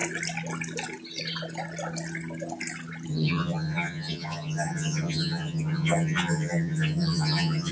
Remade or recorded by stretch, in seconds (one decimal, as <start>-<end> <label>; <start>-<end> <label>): 0.0-3.1 recorded; 3.1-7.7 remade